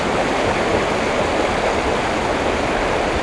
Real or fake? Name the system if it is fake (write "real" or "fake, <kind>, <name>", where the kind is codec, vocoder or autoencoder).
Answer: real